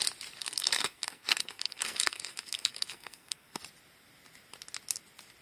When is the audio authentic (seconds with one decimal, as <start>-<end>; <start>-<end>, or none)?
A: 0.0-0.4; 3.6-5.4

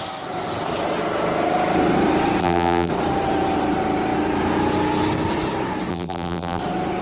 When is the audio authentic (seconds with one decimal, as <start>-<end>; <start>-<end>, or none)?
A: 0.0-2.4; 2.9-5.9; 6.6-7.0

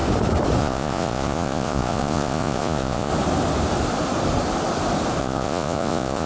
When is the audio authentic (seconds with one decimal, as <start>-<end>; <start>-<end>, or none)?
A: 0.0-0.6; 3.1-5.2

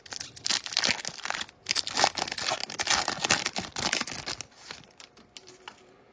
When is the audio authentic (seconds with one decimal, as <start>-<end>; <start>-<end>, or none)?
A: 0.0-6.1

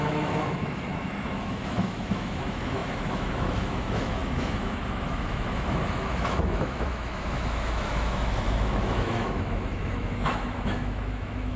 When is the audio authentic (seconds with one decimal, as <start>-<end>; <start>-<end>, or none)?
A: none

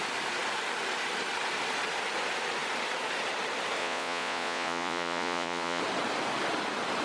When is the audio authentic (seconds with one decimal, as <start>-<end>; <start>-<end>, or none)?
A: 0.0-3.8; 5.8-7.0

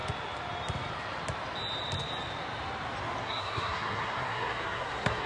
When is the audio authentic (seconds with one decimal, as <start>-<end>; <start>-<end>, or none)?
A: 0.0-3.2

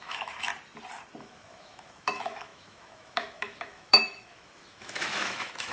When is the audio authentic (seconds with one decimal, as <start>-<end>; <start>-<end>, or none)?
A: 0.5-1.2